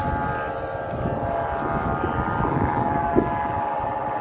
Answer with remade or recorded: recorded